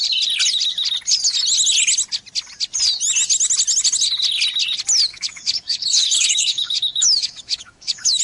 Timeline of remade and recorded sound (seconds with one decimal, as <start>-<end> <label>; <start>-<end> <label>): 0.0-5.1 recorded; 5.1-8.2 remade